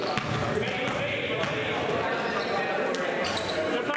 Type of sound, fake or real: real